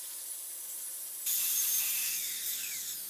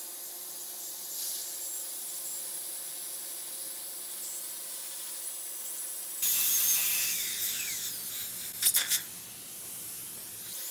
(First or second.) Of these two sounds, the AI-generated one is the first